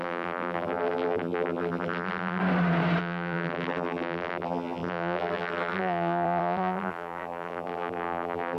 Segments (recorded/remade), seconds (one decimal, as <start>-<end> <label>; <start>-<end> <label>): 0.0-2.4 remade; 2.4-3.0 recorded; 3.0-8.6 remade